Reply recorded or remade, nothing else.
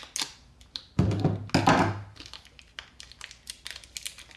recorded